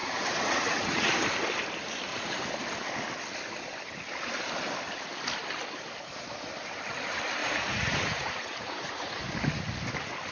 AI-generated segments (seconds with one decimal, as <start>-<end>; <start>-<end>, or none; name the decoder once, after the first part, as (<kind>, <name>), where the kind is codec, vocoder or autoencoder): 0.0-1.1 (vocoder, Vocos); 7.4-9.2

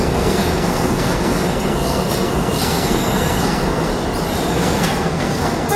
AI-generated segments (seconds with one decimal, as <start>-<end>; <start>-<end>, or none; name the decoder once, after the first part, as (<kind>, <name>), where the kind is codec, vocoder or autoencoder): 0.0-3.9 (codec, SNAC); 4.5-5.8

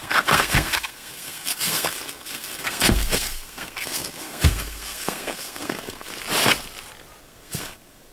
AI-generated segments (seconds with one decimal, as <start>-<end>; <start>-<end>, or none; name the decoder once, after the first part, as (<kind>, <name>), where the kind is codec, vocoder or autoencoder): 0.0-6.1 (codec, SNAC); 7.2-8.1